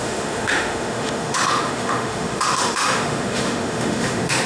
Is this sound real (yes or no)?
no